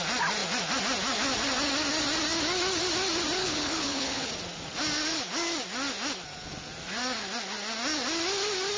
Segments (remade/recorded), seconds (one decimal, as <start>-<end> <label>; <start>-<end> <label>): 0.0-3.4 recorded; 3.4-4.3 remade; 4.3-8.8 recorded

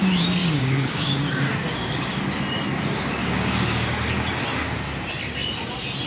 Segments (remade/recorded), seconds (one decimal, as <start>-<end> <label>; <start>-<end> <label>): 0.0-0.4 recorded; 0.4-2.2 remade; 2.2-3.2 recorded; 3.2-4.4 remade; 4.4-6.1 recorded